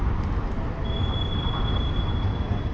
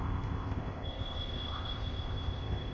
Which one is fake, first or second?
second